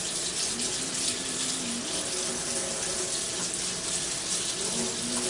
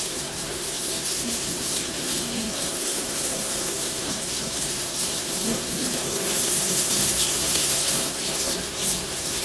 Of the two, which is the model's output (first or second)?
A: second